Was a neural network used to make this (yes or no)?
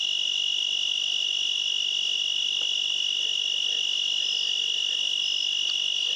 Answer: no